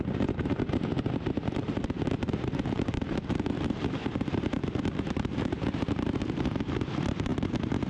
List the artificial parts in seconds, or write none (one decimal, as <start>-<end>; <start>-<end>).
0.0-7.9